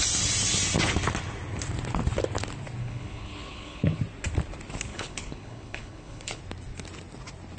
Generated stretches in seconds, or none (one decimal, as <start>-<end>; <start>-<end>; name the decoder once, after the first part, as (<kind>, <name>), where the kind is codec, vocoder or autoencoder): 2.8-4.0 (codec, HILCodec); 4.9-6.4